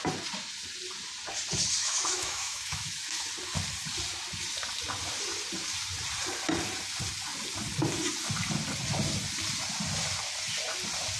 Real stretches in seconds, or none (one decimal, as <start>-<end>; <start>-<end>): 0.0-1.8; 3.3-11.2